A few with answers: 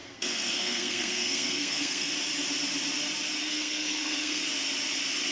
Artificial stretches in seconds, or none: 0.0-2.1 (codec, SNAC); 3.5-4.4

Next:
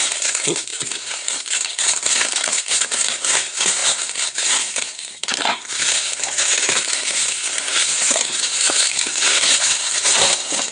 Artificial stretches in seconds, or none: 0.0-10.7 (codec, SNAC)

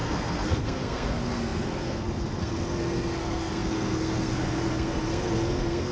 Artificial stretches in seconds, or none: 0.0-5.9 (codec, SNAC)